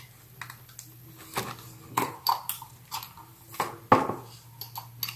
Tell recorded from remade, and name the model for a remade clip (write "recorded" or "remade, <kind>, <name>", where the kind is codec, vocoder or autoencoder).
recorded